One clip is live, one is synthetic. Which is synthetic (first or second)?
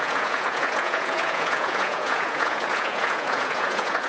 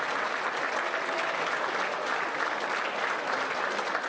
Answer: first